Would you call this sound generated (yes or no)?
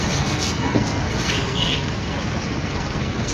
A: yes